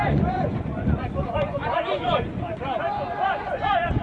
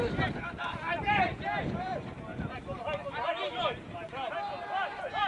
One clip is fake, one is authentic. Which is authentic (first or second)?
second